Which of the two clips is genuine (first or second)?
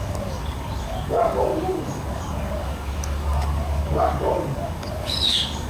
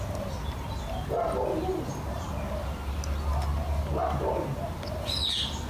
second